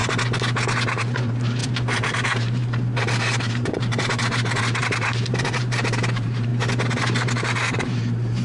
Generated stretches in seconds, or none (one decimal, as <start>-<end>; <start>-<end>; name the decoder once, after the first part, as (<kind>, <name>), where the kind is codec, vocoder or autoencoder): 0.8-6.5 (vocoder, BigVGAN v2); 7.4-8.4